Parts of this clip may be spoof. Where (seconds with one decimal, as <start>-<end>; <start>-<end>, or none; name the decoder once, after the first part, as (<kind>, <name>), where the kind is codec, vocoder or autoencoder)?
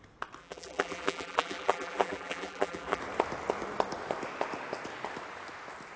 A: 0.4-3.0 (vocoder, BigVGAN v2)